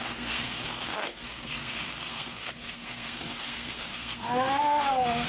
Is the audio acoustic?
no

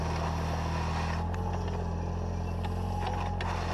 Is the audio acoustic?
yes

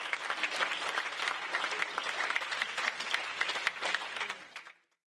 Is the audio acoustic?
yes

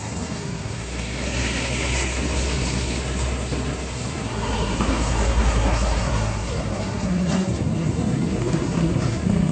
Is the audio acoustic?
no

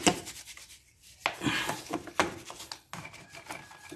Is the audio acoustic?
yes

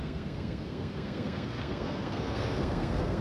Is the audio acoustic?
no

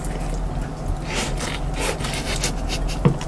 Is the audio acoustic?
yes